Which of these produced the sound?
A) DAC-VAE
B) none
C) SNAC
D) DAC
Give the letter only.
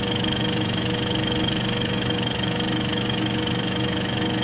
A